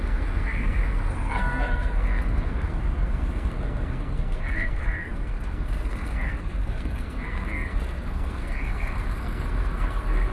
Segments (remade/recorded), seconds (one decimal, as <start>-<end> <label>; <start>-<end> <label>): 0.0-10.3 remade